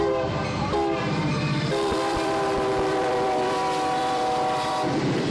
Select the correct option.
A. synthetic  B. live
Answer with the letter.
A